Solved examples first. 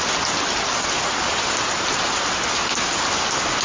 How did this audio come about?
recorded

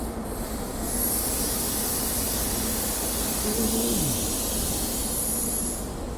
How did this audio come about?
recorded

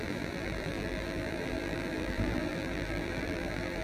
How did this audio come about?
remade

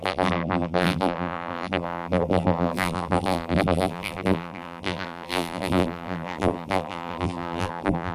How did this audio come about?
remade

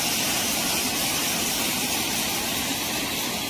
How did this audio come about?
remade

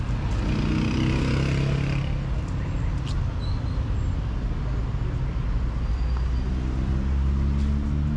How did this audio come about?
recorded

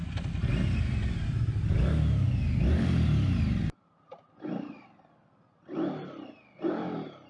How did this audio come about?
recorded